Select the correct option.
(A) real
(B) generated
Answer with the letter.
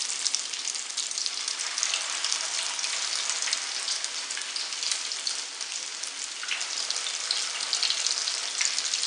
A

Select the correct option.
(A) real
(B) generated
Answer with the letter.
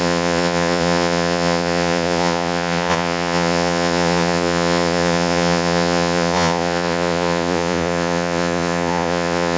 B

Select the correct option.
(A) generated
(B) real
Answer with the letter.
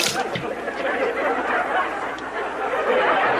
B